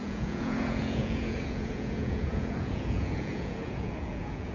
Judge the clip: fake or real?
fake